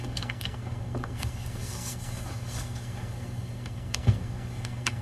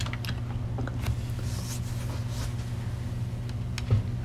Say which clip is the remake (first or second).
first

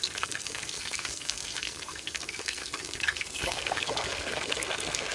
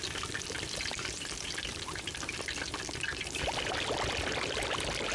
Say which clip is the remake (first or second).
first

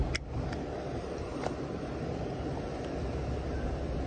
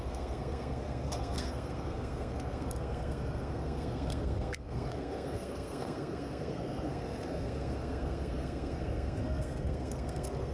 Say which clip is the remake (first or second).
second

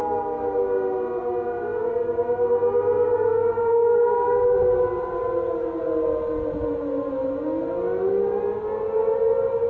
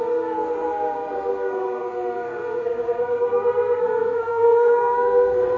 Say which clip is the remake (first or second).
second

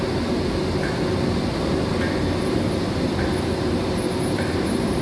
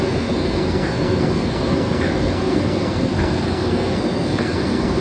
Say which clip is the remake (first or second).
second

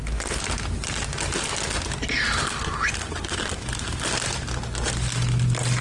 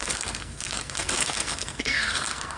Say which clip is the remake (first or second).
second